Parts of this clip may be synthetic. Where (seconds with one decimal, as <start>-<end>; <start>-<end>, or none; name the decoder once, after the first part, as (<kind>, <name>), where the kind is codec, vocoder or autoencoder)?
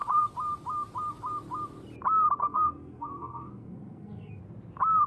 2.4-4.4 (codec, SNAC)